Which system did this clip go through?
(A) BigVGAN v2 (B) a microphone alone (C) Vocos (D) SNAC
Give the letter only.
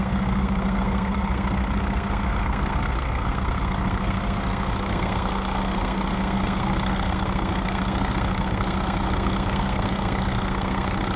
D